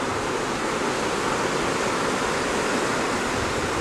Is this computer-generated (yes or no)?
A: no